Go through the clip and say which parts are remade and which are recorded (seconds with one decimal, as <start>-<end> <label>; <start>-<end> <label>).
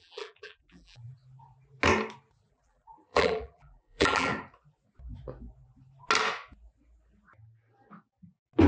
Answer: 0.0-1.2 remade; 1.2-2.5 recorded; 2.5-4.3 remade; 4.3-8.7 recorded